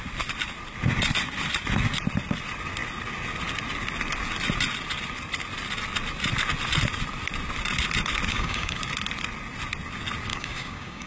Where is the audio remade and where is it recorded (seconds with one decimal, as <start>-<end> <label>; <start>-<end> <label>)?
0.0-8.3 recorded; 8.3-8.8 remade; 8.8-10.3 recorded; 10.3-11.1 remade

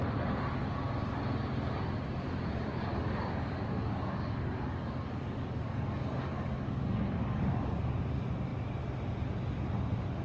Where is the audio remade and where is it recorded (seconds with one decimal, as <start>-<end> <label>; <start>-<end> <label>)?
0.0-2.7 recorded; 2.7-7.9 remade; 7.9-10.2 recorded